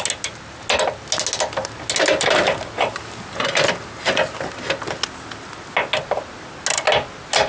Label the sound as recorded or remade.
recorded